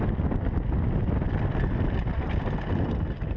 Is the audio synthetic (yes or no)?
no